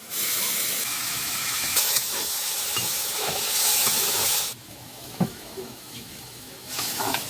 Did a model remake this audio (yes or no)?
yes